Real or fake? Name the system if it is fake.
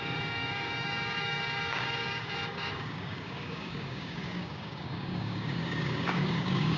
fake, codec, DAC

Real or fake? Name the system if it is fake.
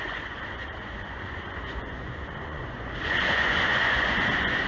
fake, vocoder, Vocos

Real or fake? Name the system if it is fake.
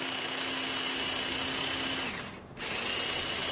real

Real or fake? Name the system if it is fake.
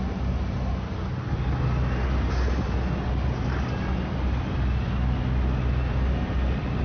real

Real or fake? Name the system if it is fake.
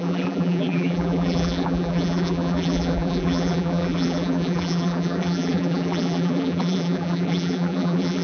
fake, vocoder, BigVGAN v2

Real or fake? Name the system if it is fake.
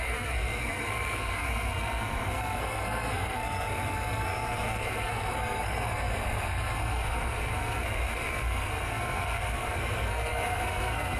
fake, codec, SNAC